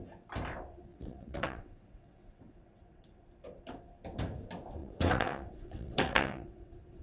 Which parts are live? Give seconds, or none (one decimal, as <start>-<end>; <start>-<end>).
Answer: 0.0-0.9; 3.2-4.8